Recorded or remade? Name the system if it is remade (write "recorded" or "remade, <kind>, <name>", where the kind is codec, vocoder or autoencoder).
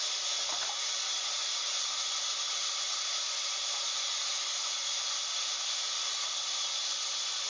recorded